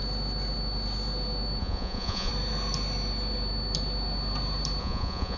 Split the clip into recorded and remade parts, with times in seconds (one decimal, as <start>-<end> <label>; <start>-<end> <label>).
0.0-1.6 recorded; 1.6-2.3 remade; 2.3-4.8 recorded; 4.8-5.4 remade